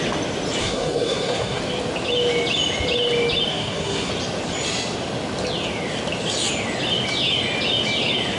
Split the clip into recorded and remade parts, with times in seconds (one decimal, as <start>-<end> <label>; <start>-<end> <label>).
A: 0.0-0.6 recorded; 0.6-1.6 remade; 1.6-3.5 recorded; 3.5-4.1 remade; 4.1-8.4 recorded